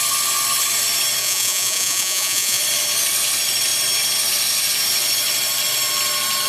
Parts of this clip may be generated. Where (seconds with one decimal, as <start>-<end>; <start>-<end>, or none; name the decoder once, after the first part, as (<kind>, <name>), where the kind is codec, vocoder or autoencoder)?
1.2-2.6 (vocoder, Vocos)